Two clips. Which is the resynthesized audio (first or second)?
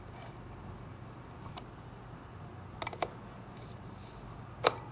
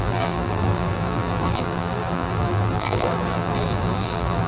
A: second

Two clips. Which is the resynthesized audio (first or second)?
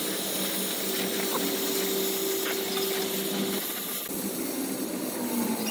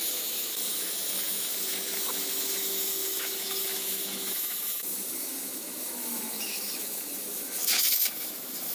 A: second